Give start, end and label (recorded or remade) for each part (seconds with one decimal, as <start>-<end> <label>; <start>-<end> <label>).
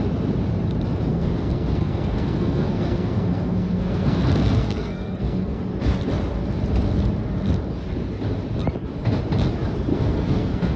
0.0-1.1 recorded; 1.1-5.6 remade; 5.6-9.9 recorded; 9.9-10.8 remade